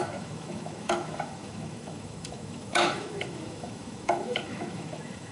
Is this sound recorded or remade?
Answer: remade